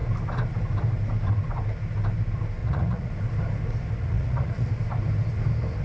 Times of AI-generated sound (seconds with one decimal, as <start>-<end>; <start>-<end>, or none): 2.6-3.1; 4.0-4.7